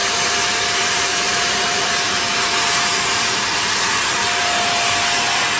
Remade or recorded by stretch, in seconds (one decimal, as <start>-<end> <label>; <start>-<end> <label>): 0.0-3.3 remade; 3.3-5.6 recorded